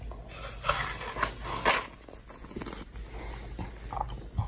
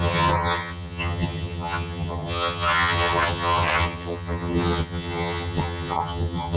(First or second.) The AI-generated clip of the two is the second